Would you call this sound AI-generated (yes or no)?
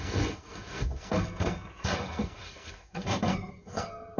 yes